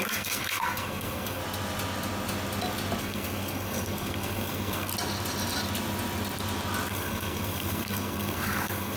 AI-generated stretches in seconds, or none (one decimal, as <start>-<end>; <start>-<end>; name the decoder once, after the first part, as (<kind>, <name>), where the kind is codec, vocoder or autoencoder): 0.0-1.4 (codec, SNAC); 3.0-4.9; 6.9-9.0